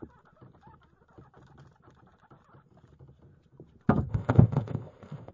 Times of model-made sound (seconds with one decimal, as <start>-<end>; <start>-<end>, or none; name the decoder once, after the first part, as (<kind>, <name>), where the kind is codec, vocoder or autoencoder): 4.1-5.3 (codec, ZipCodec)